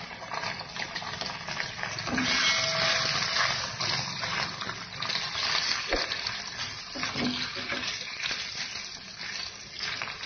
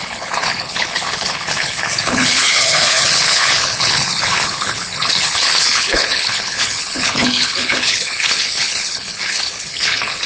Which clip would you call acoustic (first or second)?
first